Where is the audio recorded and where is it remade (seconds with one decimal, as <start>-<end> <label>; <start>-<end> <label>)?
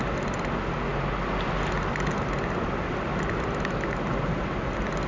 0.0-5.1 recorded